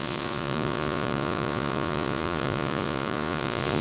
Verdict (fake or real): fake